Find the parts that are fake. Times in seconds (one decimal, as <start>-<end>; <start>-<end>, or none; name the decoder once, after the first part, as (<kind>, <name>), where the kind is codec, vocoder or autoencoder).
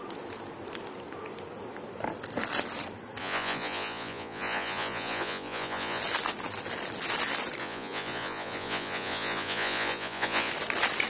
3.2-6.0 (vocoder, Vocos); 7.6-10.5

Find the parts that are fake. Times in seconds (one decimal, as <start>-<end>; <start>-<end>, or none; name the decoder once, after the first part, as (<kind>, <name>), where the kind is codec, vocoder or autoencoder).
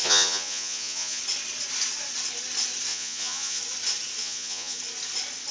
0.0-1.2 (vocoder, Vocos); 2.9-3.6; 4.2-4.8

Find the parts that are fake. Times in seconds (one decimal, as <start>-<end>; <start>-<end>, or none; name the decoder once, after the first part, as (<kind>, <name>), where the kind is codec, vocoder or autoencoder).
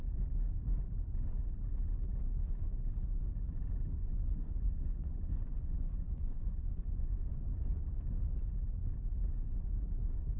4.0-7.6 (vocoder, Vocos)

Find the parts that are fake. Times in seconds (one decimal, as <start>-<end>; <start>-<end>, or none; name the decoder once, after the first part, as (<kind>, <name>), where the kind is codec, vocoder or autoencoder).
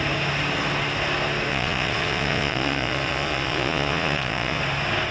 1.5-4.6 (vocoder, Vocos)